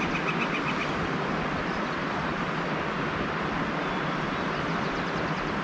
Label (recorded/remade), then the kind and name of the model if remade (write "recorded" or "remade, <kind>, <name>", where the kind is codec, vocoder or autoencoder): recorded